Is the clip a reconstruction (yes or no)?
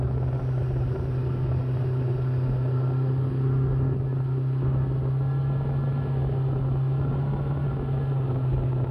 no